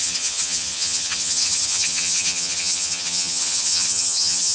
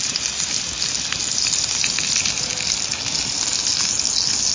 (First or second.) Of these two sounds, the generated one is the first